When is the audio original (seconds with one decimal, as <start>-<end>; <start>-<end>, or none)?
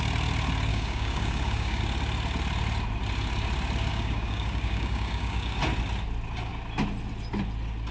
0.0-0.7; 1.8-3.9; 5.6-7.9